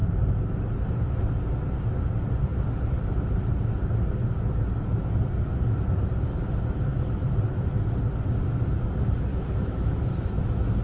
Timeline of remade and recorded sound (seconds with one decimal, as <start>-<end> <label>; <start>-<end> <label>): 0.0-9.3 recorded; 9.3-10.8 remade